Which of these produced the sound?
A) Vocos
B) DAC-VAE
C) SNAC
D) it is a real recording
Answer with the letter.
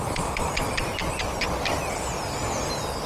D